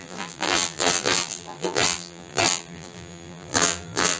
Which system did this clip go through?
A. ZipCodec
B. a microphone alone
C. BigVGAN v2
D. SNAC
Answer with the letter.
C